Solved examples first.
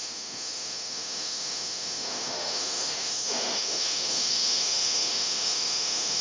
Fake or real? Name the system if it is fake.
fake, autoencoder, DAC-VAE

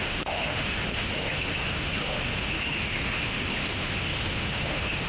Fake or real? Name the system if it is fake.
fake, autoencoder, DAC-VAE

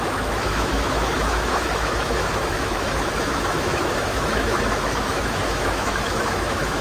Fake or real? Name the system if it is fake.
fake, autoencoder, DAC-VAE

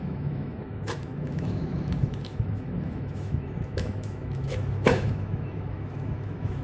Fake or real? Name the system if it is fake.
fake, autoencoder, DAC-VAE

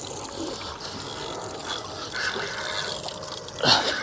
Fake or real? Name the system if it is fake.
real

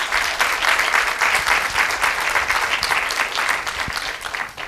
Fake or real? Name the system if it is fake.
real